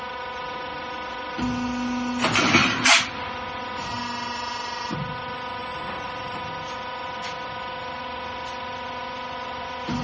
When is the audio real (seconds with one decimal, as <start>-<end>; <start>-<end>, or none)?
0.0-2.6; 3.1-5.6; 6.5-10.0